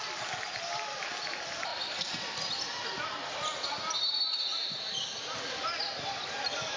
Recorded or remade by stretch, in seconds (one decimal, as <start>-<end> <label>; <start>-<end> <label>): 0.0-1.7 remade; 1.7-4.7 recorded; 4.7-6.8 remade